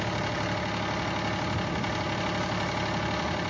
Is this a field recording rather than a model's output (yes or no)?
yes